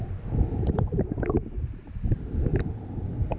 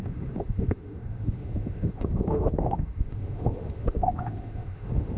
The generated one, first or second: second